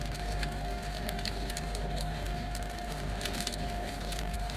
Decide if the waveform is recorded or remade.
remade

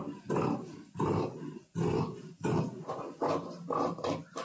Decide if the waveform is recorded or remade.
recorded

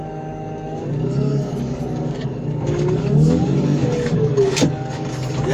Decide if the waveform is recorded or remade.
remade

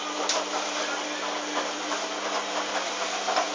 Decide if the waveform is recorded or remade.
recorded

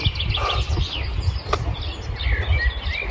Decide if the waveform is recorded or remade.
recorded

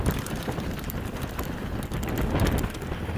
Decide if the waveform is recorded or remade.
recorded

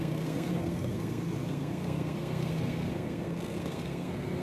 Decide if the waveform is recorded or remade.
remade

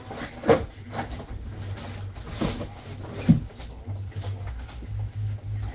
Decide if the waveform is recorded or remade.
recorded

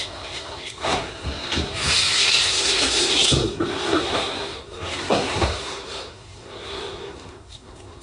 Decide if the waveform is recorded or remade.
remade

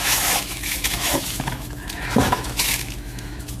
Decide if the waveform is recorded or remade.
remade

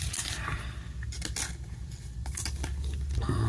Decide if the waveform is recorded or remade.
recorded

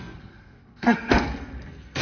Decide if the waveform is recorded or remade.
remade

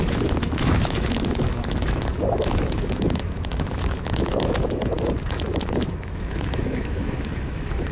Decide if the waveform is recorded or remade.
remade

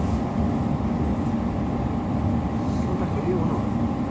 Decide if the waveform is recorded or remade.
remade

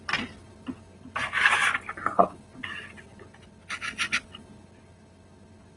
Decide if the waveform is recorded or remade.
recorded